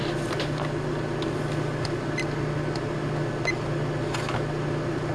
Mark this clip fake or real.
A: real